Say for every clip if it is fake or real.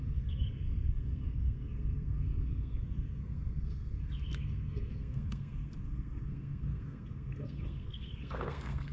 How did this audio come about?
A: fake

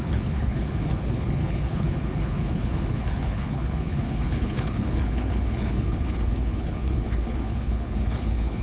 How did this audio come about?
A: fake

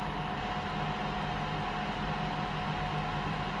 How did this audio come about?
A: real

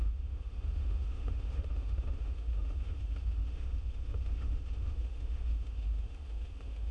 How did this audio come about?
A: fake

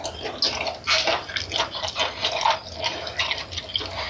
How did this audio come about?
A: real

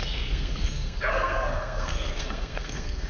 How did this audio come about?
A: fake